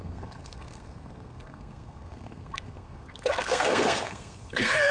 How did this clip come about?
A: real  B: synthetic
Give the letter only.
B